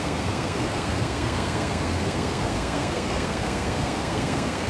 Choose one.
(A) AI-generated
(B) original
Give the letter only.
A